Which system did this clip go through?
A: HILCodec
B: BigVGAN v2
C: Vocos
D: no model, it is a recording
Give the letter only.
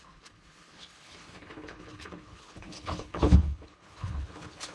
A